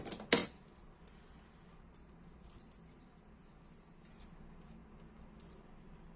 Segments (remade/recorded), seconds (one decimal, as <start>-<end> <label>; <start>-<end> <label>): 0.0-6.2 recorded